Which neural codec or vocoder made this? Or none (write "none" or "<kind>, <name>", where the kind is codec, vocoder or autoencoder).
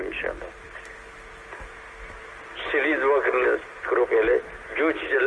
none